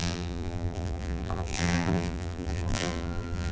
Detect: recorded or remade remade